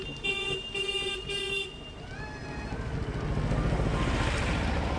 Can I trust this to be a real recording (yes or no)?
yes